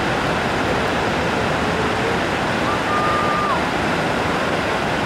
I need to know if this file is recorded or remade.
remade